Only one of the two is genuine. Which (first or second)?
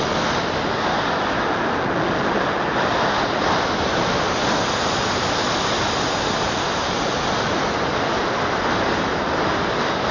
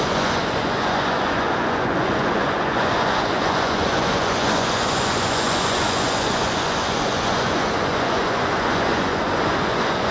first